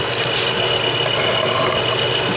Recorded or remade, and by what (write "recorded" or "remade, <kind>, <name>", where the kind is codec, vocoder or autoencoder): recorded